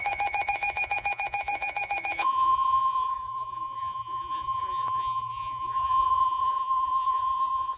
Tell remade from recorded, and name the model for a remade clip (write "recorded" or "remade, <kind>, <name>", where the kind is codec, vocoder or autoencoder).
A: remade, vocoder, Vocos